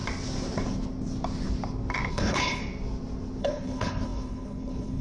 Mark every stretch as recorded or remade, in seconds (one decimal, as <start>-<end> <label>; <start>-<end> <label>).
0.0-2.1 recorded; 2.1-2.6 remade; 2.6-3.4 recorded; 3.4-5.0 remade